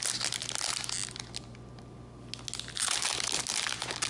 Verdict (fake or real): real